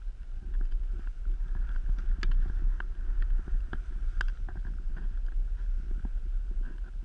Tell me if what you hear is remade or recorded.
recorded